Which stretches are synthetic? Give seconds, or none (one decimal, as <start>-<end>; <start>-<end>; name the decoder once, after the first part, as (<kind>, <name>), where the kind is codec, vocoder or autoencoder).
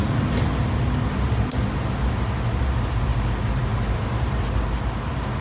none